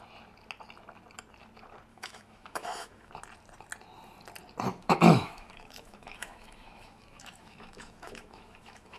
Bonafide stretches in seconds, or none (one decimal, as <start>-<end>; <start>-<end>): 0.0-1.9; 3.1-4.7